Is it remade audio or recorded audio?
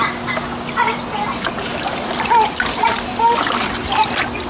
recorded